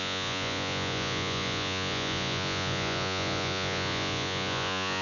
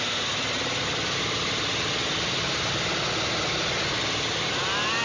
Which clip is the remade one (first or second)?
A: first